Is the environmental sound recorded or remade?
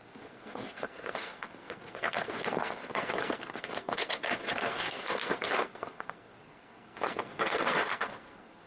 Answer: remade